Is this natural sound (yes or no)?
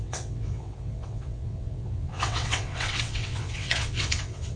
no